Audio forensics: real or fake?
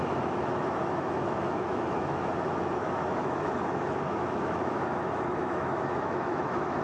fake